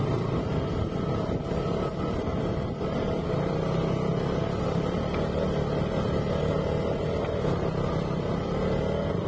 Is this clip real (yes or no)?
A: yes